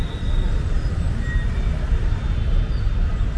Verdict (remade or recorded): recorded